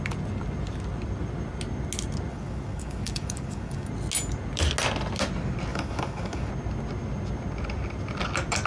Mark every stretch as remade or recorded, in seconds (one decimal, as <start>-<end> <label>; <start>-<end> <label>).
0.0-2.3 recorded; 2.3-3.9 remade; 3.9-5.7 recorded; 5.7-6.5 remade; 6.5-8.7 recorded